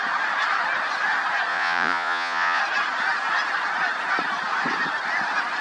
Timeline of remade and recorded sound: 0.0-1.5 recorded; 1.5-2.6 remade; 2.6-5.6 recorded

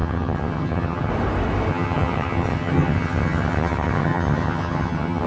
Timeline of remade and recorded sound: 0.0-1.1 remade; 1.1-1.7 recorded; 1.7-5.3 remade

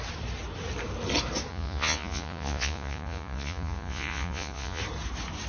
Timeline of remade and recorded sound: 0.0-1.5 recorded; 1.5-4.8 remade; 4.8-5.5 recorded

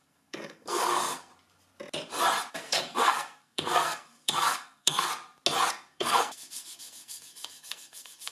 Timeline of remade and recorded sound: 0.0-1.3 remade; 1.3-2.5 recorded; 2.5-5.1 remade; 5.1-5.7 recorded; 5.7-8.3 remade

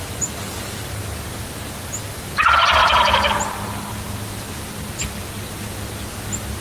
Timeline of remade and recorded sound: 0.0-6.6 recorded